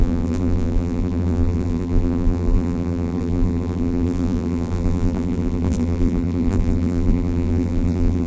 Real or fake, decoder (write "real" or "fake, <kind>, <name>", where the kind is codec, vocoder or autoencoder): fake, vocoder, BigVGAN v2